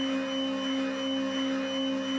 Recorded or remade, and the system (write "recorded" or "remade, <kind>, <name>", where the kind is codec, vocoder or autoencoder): recorded